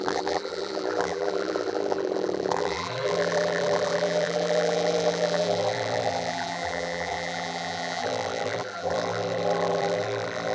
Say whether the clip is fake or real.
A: fake